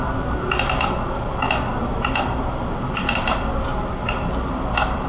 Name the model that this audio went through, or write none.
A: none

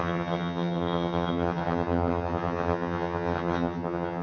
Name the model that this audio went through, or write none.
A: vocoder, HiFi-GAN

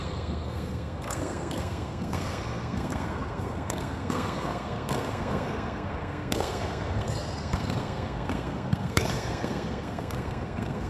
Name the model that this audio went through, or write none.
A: codec, SNAC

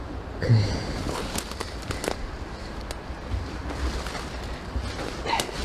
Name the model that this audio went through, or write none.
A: none